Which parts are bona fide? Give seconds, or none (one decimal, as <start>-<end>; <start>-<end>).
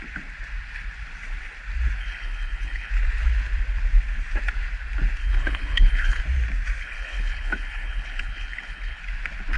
0.0-2.0; 2.9-5.2; 6.2-6.8; 9.0-9.6